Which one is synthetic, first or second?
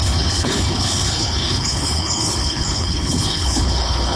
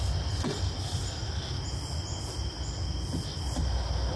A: first